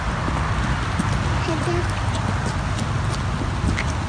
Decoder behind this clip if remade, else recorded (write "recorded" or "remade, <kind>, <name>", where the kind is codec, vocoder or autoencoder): recorded